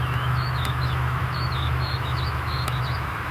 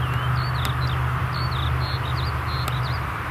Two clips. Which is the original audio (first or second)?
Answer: second